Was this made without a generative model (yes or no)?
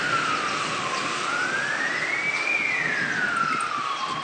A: yes